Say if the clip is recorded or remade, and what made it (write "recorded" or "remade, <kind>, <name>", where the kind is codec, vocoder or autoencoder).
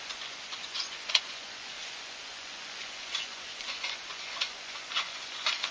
remade, vocoder, Vocos